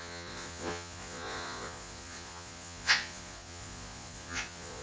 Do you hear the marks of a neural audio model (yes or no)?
yes